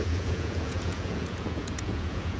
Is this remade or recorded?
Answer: remade